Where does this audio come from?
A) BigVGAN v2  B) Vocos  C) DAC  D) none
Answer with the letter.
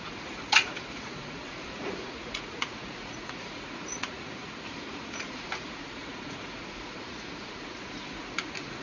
B